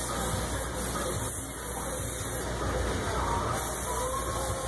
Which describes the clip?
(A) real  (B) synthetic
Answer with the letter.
A